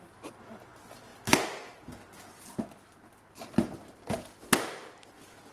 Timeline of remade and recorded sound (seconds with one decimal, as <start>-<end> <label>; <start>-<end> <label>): 0.0-5.5 recorded